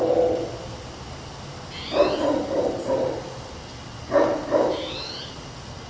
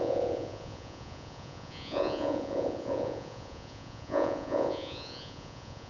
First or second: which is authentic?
first